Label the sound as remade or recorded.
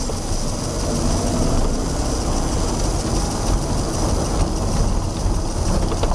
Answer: recorded